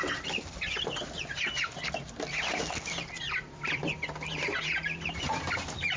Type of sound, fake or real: fake